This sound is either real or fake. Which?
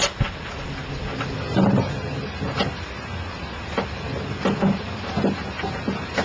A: real